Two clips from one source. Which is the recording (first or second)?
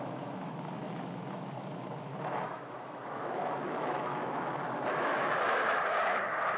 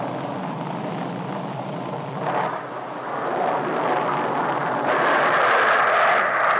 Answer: second